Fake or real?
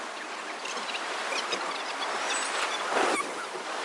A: real